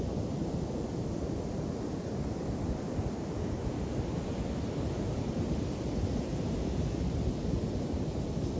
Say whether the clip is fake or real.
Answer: real